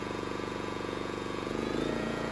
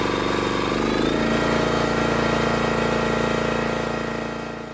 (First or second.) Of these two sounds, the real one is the second